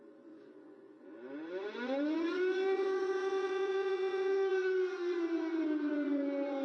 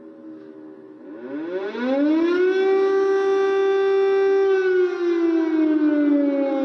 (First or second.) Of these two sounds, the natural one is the second